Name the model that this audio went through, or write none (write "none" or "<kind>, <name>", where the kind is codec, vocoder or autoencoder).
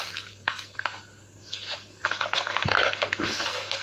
codec, SNAC